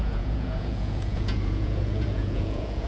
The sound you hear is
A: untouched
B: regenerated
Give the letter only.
B